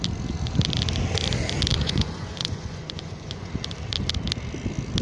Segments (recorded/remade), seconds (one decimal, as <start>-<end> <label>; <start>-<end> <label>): 0.0-1.7 recorded; 1.7-3.5 remade; 3.5-5.0 recorded